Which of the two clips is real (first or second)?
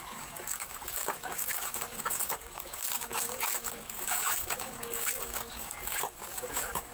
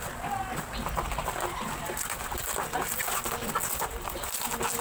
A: second